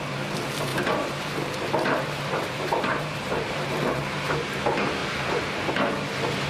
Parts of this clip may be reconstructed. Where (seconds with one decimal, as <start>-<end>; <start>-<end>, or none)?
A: 0.7-4.6; 5.0-5.7